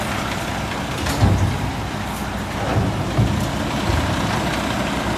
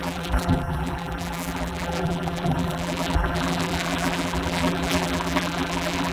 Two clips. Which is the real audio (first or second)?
first